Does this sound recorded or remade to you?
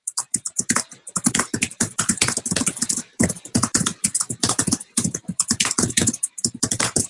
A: remade